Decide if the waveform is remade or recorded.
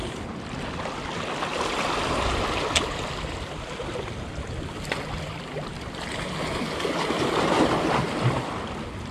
recorded